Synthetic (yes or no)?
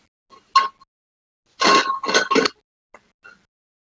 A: no